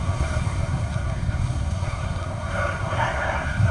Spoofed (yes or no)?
yes